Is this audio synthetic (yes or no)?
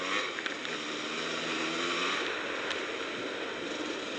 no